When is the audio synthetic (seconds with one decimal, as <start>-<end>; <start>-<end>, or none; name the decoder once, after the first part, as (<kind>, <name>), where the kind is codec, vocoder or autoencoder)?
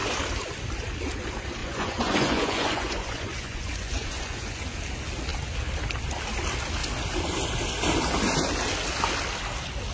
1.6-4.6 (vocoder, Vocos)